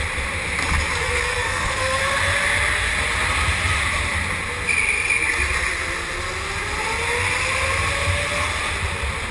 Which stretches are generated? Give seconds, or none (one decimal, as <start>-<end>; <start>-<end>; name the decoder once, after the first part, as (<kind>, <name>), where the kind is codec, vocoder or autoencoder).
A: 1.0-2.0 (codec, SNAC)